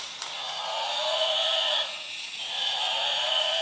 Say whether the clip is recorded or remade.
remade